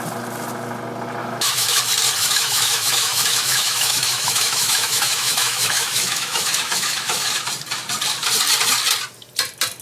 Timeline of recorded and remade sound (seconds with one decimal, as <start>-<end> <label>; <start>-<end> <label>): 0.0-1.2 recorded; 1.2-1.8 remade; 1.8-2.2 recorded; 2.2-7.4 remade; 7.4-9.8 recorded